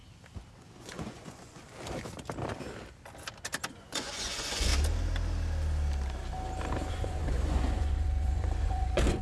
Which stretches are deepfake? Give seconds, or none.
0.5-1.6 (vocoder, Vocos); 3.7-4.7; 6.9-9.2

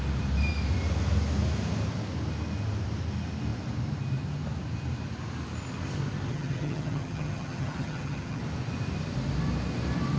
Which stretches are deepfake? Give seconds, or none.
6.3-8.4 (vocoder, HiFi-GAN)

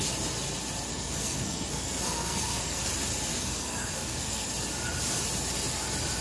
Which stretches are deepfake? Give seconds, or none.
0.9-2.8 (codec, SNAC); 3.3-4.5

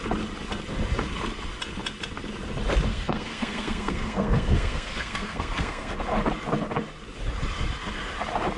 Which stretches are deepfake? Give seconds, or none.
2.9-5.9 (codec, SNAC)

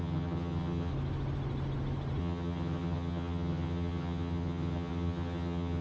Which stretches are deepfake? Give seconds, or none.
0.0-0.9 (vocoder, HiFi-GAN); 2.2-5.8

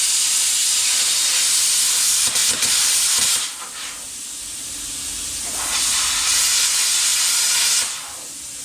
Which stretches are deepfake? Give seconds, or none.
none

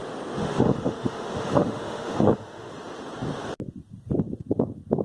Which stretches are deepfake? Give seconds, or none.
0.4-2.7 (autoencoder, DAC-VAE)

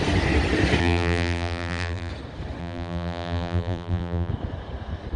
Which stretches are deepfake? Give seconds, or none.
0.8-2.1 (vocoder, BigVGAN v2); 2.6-4.3